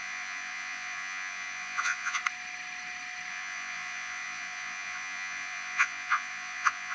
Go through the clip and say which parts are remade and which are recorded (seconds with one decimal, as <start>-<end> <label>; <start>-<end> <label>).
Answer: 0.0-2.2 remade; 2.2-3.3 recorded; 3.3-6.9 remade